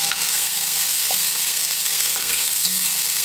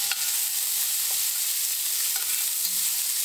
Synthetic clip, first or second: first